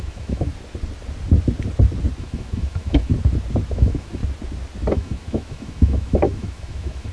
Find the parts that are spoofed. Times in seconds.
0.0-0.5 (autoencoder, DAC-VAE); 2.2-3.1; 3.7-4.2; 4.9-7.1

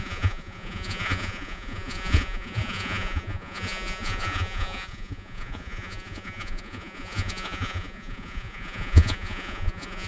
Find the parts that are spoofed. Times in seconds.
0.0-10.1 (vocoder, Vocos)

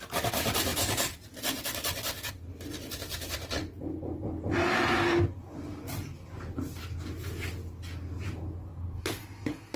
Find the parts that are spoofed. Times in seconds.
none